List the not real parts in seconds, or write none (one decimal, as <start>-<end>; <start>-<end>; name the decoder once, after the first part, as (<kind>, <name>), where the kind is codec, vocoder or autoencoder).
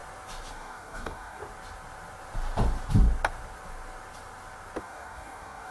0.5-1.4 (codec, DAC); 4.8-5.7